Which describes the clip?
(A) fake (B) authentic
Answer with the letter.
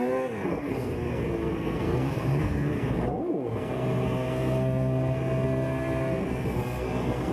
A